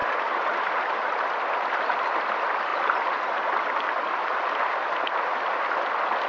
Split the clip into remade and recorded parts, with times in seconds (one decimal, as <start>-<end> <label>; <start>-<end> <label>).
0.0-1.3 remade; 1.3-6.3 recorded